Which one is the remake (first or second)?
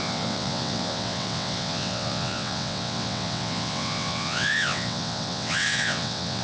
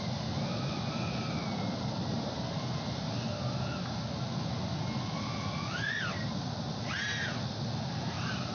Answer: first